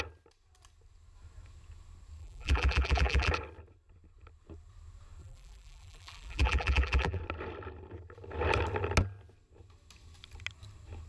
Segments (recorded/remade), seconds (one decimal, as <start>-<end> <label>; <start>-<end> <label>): 0.0-2.2 recorded; 2.2-3.3 remade; 3.3-5.2 recorded; 5.2-7.2 remade; 7.2-11.1 recorded